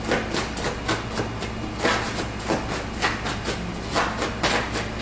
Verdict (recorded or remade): recorded